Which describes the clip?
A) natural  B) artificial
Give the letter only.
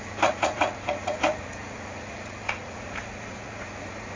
B